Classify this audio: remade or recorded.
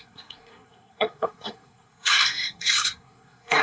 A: remade